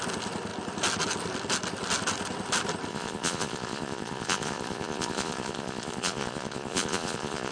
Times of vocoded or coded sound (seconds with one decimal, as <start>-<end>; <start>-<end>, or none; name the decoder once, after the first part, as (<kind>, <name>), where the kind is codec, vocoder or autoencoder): 2.9-7.5 (vocoder, Vocos)